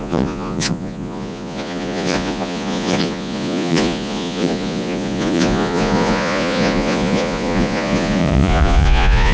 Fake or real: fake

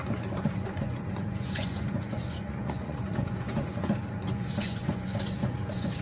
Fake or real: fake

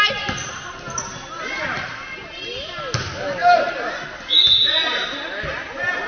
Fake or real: real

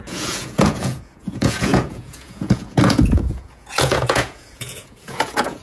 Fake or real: fake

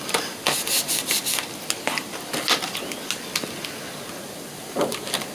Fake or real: real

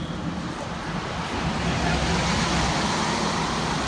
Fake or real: real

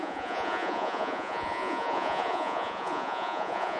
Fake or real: fake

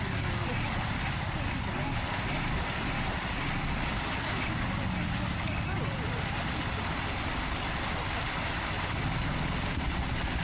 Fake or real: real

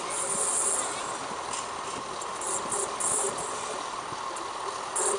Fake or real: real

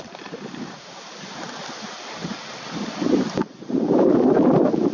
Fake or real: real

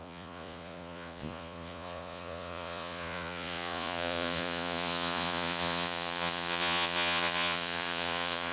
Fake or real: fake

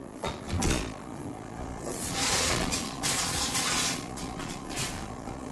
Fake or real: fake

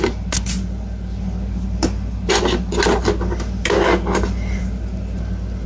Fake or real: real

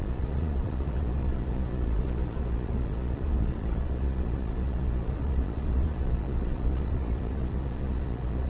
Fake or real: fake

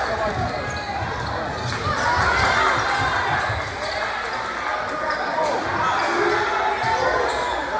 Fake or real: real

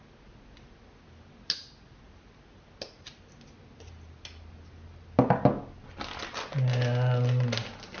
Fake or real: real